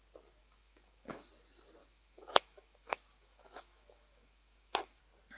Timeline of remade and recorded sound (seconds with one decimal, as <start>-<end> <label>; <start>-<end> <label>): 0.0-0.4 recorded; 0.4-1.3 remade; 1.3-1.8 recorded; 1.8-5.0 remade; 5.0-5.4 recorded